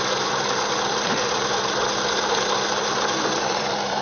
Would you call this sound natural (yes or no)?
no